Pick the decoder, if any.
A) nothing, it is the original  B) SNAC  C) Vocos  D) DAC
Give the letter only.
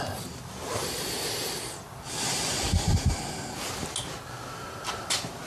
A